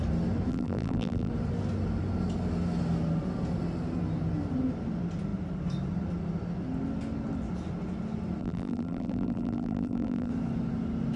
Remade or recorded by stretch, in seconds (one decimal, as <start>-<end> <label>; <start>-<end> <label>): 0.0-0.5 recorded; 0.5-1.3 remade; 1.3-8.4 recorded; 8.4-10.3 remade; 10.3-11.2 recorded